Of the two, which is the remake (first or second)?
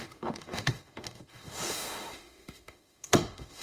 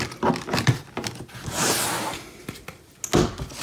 first